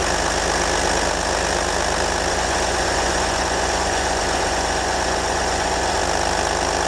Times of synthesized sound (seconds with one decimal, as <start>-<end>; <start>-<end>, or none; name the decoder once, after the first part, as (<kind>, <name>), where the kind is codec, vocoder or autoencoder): 2.3-6.0 (vocoder, Vocos)